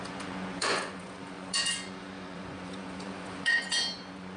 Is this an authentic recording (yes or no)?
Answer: no